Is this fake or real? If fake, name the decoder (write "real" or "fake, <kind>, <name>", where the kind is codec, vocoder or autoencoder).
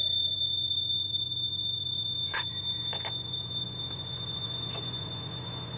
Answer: fake, vocoder, Vocos